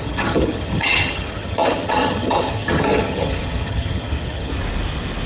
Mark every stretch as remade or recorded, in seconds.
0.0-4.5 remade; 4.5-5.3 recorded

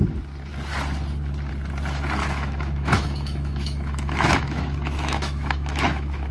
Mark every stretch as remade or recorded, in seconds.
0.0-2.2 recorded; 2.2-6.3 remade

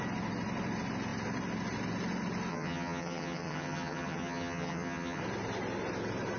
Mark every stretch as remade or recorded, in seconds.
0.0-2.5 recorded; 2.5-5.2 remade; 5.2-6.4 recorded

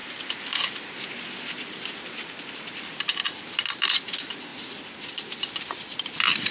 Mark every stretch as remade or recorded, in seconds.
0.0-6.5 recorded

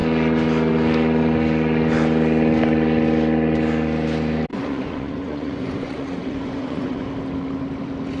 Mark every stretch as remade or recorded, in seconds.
0.0-4.5 recorded; 4.5-7.1 remade; 7.1-8.2 recorded

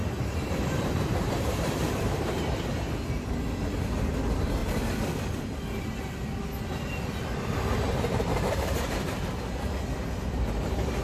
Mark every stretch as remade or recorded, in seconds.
0.0-2.4 remade; 2.4-8.3 recorded; 8.3-9.3 remade; 9.3-11.0 recorded

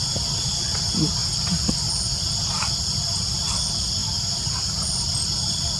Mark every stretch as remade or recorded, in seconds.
0.0-5.8 recorded

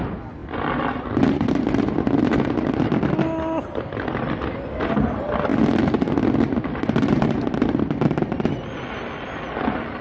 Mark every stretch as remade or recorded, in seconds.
0.0-10.0 recorded